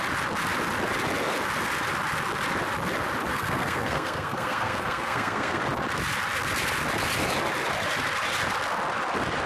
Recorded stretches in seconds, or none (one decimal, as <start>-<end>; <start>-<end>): 0.0-3.3; 5.6-9.5